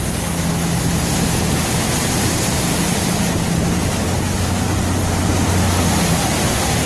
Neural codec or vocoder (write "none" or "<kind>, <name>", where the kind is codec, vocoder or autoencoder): none